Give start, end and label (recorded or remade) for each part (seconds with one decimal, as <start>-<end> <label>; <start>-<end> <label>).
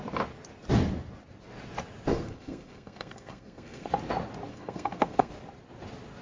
0.0-2.1 recorded; 2.1-3.9 remade; 3.9-4.5 recorded; 4.5-5.3 remade; 5.3-6.2 recorded